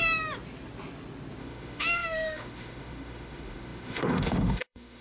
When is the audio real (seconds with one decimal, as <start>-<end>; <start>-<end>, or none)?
0.0-1.4